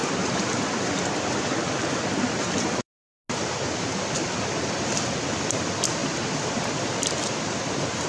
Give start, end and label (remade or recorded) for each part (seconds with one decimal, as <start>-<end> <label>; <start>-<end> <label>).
0.0-3.1 remade; 3.1-8.1 recorded